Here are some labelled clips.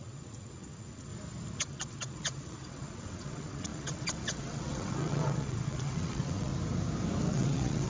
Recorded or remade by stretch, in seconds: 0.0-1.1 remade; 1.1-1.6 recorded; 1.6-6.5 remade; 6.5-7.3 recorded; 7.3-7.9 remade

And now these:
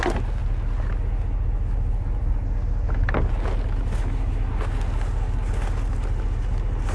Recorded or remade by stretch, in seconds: 0.0-6.9 recorded

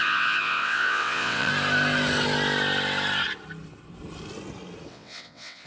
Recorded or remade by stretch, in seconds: 0.0-1.5 remade; 1.5-4.9 recorded; 4.9-5.7 remade

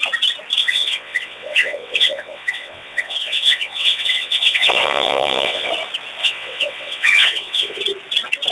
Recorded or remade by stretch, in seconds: 0.0-0.6 recorded; 0.6-5.7 remade; 5.7-6.2 recorded; 6.2-7.8 remade; 7.8-8.5 recorded

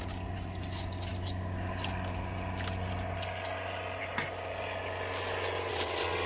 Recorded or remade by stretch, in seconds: 0.0-5.7 recorded; 5.7-6.3 remade